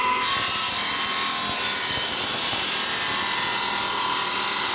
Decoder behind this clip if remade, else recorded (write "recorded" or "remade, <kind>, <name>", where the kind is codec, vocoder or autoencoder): recorded